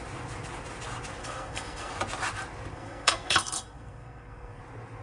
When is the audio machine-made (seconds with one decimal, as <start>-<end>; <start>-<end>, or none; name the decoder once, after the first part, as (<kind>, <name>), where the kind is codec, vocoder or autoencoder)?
1.2-1.9 (codec, SNAC); 2.7-4.6